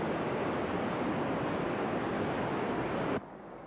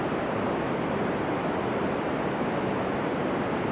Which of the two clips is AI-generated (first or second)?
first